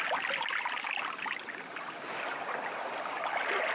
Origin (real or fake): real